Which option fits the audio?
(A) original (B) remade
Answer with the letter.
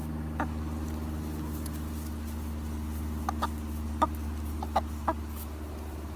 A